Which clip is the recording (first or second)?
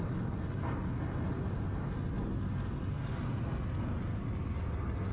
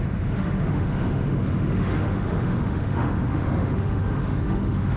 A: first